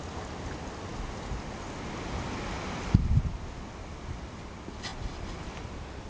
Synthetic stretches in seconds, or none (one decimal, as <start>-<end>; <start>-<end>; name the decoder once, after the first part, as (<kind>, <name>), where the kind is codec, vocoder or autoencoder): 4.9-6.1 (vocoder, BigVGAN v2)